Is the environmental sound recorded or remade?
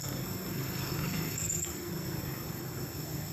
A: remade